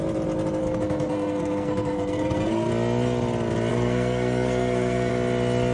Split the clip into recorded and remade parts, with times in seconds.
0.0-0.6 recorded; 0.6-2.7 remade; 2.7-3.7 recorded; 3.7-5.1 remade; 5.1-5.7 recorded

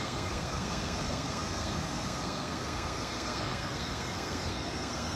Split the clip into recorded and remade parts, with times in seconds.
0.0-5.2 remade